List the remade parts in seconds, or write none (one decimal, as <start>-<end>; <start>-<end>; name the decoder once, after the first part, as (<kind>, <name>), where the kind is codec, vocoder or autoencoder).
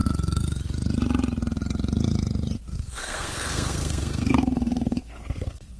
2.7-5.8 (codec, SNAC)